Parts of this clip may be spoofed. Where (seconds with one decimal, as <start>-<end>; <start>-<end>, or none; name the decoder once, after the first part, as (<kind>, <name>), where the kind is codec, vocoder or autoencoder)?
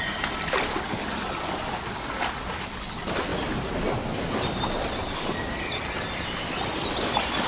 none